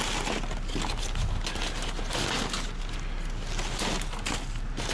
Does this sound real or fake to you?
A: real